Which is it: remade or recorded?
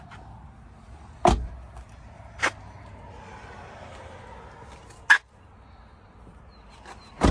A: recorded